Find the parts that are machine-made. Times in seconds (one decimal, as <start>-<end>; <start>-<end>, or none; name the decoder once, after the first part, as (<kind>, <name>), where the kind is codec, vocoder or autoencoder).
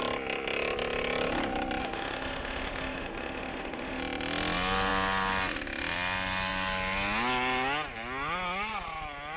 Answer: 1.8-4.0 (autoencoder, DAC-VAE)